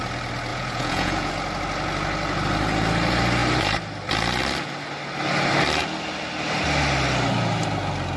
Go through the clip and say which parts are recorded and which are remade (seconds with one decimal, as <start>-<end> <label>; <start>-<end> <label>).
0.0-0.5 recorded; 0.5-1.3 remade; 1.3-8.2 recorded